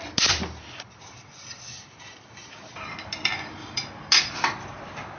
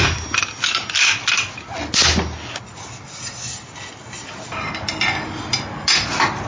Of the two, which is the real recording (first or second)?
second